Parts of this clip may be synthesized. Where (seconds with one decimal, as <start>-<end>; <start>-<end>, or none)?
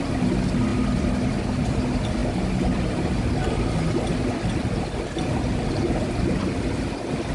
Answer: none